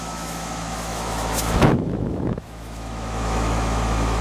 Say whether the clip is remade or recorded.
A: remade